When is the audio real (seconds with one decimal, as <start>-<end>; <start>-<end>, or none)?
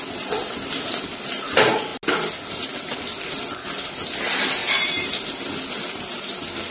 0.0-4.6; 5.6-6.7